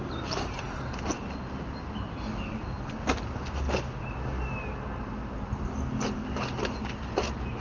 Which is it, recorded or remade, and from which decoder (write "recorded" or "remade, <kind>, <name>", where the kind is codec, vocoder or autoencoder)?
recorded